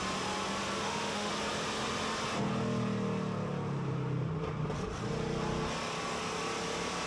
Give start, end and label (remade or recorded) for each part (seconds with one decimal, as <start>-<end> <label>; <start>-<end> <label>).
0.0-0.8 recorded; 0.8-1.3 remade; 1.3-7.1 recorded